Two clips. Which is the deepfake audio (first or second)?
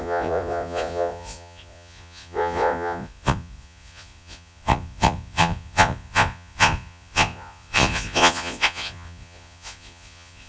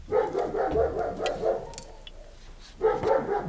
first